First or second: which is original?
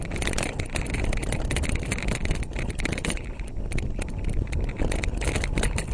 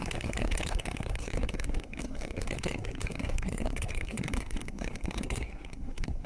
first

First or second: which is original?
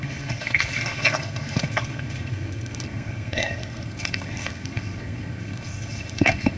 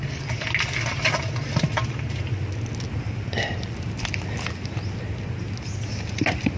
second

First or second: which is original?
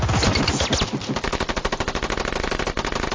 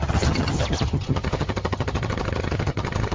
first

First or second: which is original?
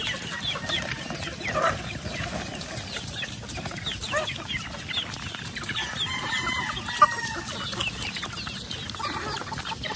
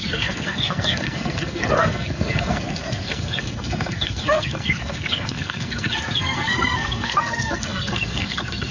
first